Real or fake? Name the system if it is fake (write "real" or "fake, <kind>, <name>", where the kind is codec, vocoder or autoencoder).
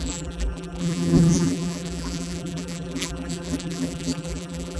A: fake, vocoder, BigVGAN v2